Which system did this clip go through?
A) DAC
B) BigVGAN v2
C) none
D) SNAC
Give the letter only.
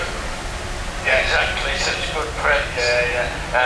C